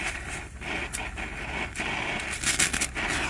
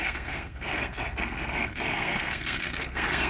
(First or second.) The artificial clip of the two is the second